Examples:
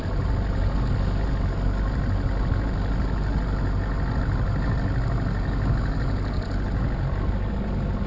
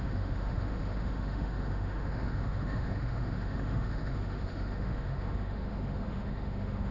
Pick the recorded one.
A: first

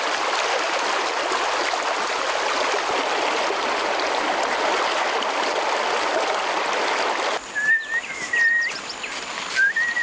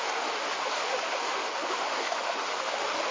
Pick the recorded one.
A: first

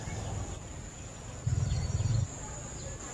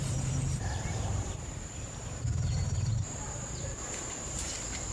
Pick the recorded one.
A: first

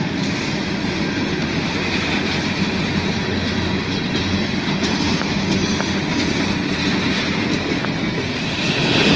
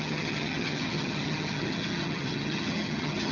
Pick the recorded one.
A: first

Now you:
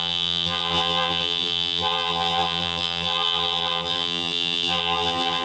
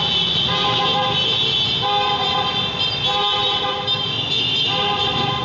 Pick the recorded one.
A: second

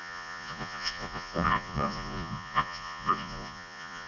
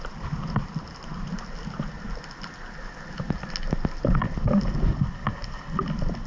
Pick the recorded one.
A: second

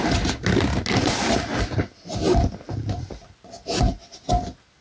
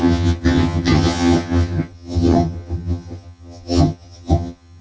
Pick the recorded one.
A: first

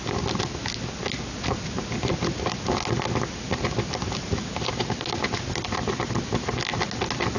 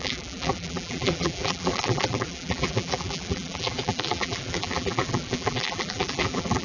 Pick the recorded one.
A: first